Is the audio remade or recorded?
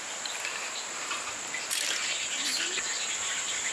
recorded